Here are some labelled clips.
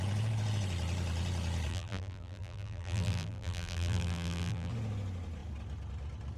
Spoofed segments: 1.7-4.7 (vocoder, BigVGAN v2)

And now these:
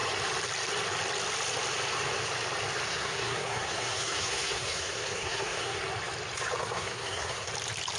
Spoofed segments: 2.9-5.8 (codec, SNAC); 6.6-7.5